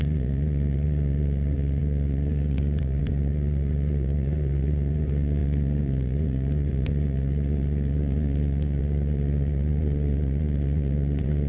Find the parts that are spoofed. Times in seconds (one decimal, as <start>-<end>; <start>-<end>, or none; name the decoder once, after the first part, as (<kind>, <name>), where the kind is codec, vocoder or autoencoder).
0.0-11.5 (vocoder, Vocos)